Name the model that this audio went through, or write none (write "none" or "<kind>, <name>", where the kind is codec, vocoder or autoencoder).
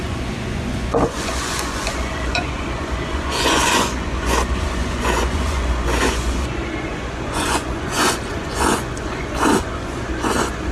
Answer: vocoder, Vocos